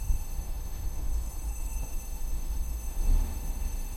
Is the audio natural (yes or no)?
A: no